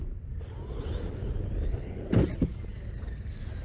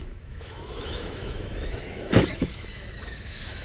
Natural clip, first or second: first